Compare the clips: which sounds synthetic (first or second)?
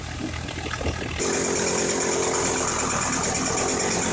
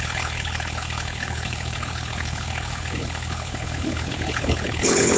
second